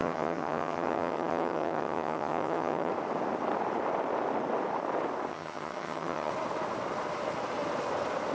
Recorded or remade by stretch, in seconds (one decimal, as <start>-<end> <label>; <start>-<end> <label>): 0.0-2.9 remade; 2.9-5.3 recorded; 5.3-6.3 remade; 6.3-8.3 recorded